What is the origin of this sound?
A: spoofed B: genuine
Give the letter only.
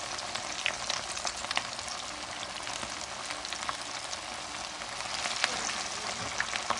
B